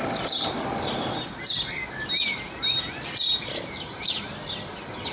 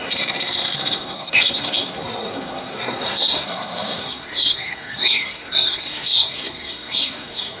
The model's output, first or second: second